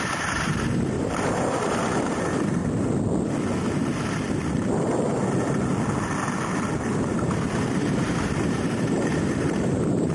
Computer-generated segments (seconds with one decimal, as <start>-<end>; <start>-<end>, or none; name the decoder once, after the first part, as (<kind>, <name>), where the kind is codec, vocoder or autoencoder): 0.0-2.6 (vocoder, BigVGAN v2); 6.8-10.1